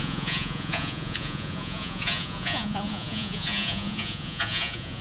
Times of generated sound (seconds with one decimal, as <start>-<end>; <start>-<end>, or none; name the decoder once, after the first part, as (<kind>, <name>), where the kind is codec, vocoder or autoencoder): 0.0-5.0 (vocoder, Vocos)